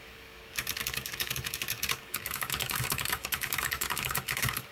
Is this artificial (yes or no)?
yes